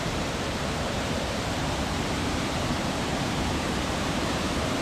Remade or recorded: remade